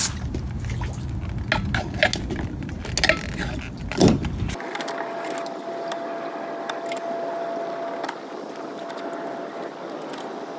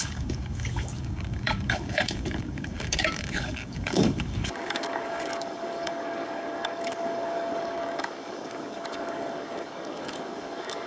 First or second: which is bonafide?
first